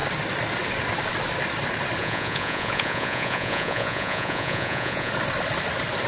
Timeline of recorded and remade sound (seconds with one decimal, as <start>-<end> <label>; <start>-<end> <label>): 0.0-2.0 recorded; 2.0-5.1 remade; 5.1-6.1 recorded